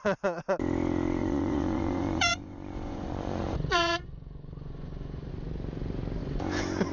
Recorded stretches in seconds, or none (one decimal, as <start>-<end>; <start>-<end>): 0.0-1.2; 5.3-6.2